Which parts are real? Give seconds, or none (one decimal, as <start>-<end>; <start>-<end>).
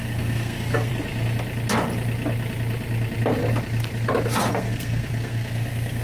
0.9-4.5